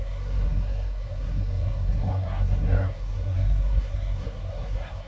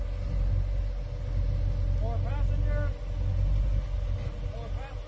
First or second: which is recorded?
second